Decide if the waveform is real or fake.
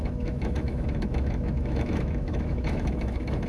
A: fake